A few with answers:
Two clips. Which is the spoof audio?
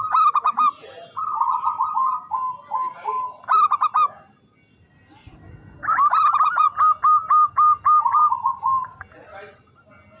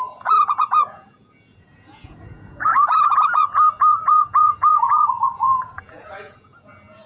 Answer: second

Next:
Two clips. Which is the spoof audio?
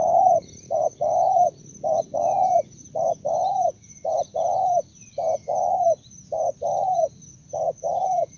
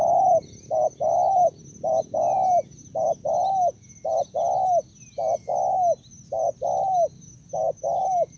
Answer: first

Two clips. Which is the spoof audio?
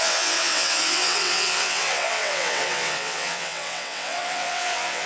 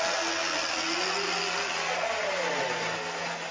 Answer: first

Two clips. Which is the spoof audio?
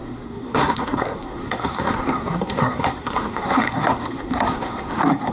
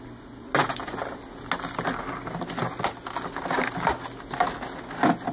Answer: first